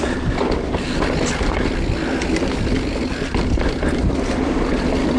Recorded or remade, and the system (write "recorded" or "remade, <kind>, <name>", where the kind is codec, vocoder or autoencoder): recorded